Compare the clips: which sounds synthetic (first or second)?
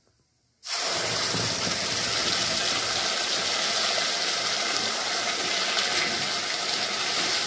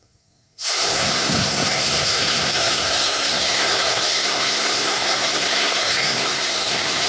second